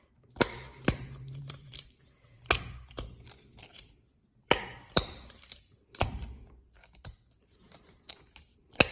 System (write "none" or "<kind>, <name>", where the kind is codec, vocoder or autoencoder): vocoder, BigVGAN v2